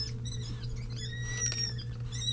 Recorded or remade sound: recorded